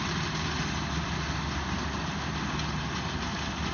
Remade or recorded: recorded